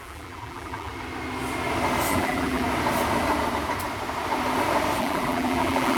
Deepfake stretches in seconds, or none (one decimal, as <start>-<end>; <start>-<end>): 0.0-0.9; 2.1-2.6; 5.0-6.0